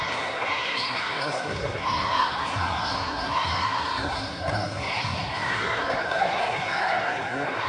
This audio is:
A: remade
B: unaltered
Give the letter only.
A